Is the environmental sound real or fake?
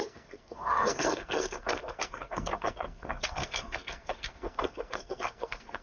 fake